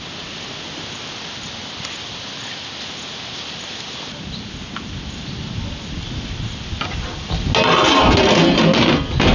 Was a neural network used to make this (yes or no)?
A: no